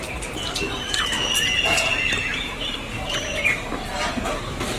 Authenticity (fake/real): real